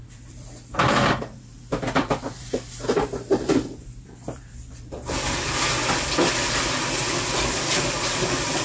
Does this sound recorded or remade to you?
remade